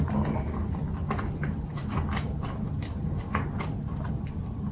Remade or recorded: recorded